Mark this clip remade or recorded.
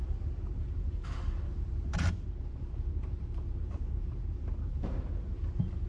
remade